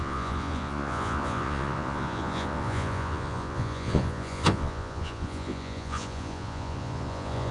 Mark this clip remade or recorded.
remade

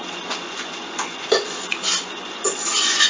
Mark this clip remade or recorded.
remade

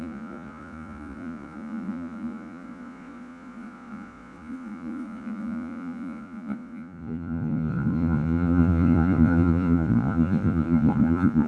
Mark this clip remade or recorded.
remade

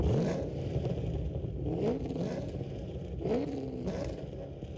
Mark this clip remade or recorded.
recorded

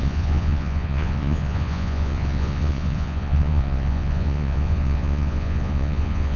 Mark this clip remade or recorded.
remade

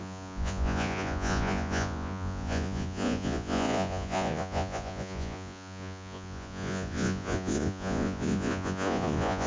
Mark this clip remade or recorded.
remade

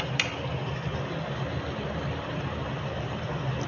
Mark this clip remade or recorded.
recorded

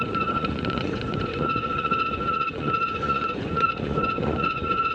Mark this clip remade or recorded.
remade